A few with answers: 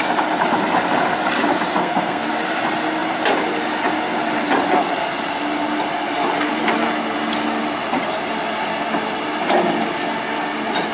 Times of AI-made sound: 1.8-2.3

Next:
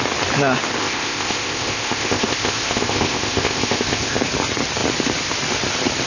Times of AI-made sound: 0.8-4.2

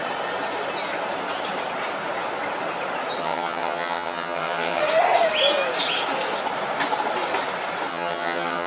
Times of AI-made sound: 3.2-4.8; 7.9-8.7

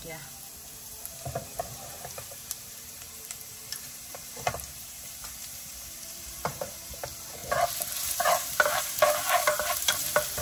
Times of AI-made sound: 0.0-7.4; 8.1-10.4

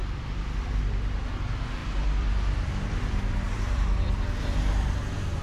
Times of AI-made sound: 0.0-0.8; 1.8-5.0

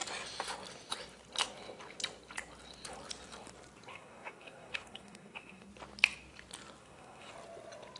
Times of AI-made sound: 3.9-5.7; 6.8-7.3

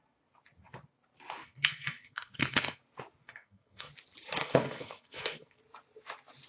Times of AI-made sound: 1.4-2.8; 3.2-3.9; 4.4-5.6

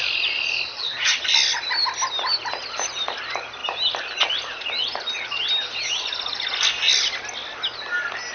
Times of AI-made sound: 0.7-1.2